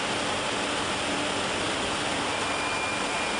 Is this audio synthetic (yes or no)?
no